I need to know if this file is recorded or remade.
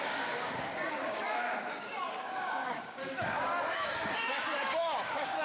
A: remade